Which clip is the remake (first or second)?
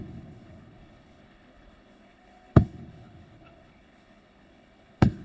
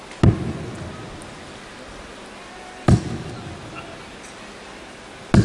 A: first